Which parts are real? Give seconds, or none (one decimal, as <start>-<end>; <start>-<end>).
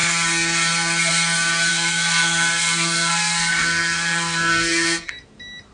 0.0-1.7; 5.1-5.7